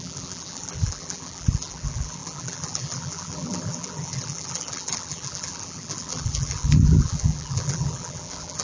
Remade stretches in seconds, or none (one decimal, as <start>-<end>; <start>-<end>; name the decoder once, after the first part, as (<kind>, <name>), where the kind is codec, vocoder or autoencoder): 0.0-8.6 (vocoder, BigVGAN v2)